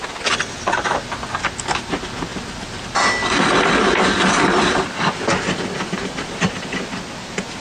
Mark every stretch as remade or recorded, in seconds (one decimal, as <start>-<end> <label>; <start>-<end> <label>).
0.0-7.6 recorded